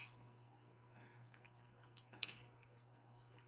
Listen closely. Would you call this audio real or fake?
fake